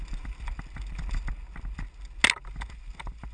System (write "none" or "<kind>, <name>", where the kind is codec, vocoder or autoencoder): none